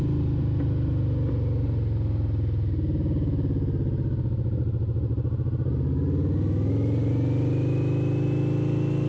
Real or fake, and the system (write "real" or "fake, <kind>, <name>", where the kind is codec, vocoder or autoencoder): real